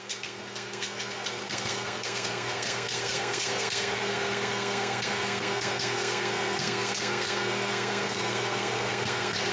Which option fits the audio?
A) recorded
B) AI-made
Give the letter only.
B